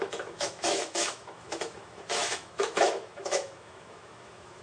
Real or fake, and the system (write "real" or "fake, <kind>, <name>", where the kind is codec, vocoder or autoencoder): fake, autoencoder, DAC-VAE